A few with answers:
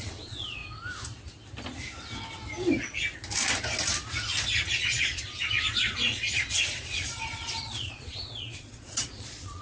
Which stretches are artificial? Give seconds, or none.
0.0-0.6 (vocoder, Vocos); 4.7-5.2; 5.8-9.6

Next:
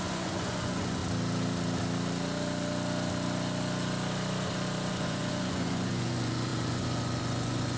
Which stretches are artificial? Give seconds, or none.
0.0-1.0 (vocoder, Vocos); 4.9-7.8